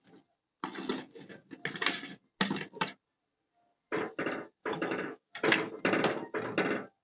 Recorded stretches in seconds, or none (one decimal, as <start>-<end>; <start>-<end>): 0.0-4.6; 5.3-7.0